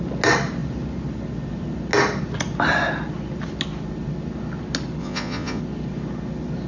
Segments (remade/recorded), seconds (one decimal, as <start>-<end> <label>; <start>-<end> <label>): 0.0-5.0 recorded; 5.0-5.6 remade; 5.6-6.7 recorded